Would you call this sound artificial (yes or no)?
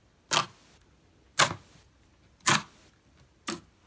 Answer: no